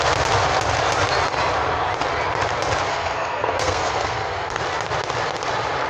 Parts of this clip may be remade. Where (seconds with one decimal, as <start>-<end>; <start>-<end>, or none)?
2.9-4.6